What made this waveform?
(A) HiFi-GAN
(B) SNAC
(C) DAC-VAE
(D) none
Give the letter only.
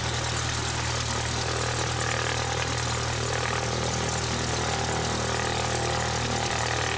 D